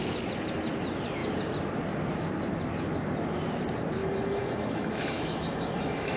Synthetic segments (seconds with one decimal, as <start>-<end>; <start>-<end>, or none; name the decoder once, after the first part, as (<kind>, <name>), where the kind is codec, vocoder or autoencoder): 4.0-6.2 (autoencoder, DAC-VAE)